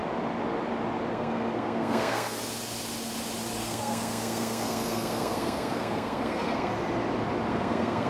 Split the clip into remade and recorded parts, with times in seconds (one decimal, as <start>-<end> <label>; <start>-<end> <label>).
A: 0.0-1.1 recorded; 1.1-2.4 remade; 2.4-3.6 recorded; 3.6-6.7 remade; 6.7-7.5 recorded; 7.5-8.1 remade